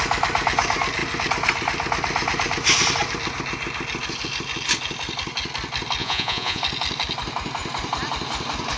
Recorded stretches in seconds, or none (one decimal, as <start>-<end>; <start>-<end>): 0.0-6.0; 6.6-8.8